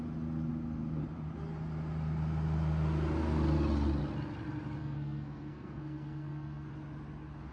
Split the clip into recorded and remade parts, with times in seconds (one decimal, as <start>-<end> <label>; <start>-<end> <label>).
0.0-4.8 recorded; 4.8-6.7 remade; 6.7-7.5 recorded